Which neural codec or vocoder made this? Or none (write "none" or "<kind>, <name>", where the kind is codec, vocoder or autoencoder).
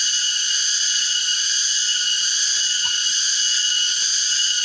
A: none